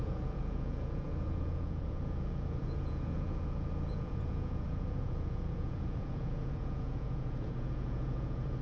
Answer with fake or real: fake